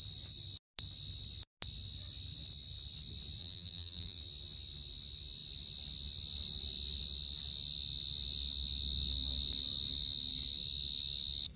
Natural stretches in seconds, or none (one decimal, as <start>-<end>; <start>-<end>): 0.0-3.4; 4.2-11.6